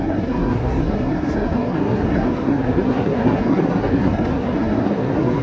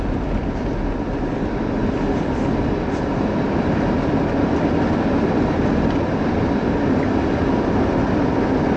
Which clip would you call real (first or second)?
second